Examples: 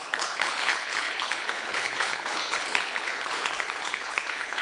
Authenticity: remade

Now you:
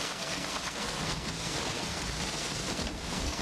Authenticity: remade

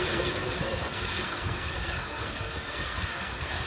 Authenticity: remade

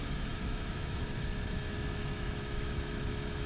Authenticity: remade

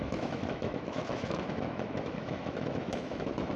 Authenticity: remade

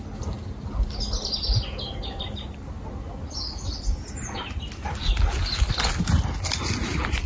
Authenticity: recorded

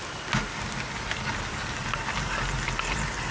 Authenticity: recorded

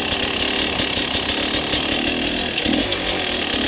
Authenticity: recorded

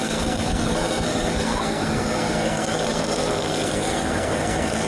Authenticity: remade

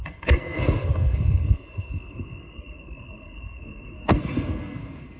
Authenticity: remade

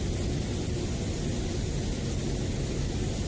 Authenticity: recorded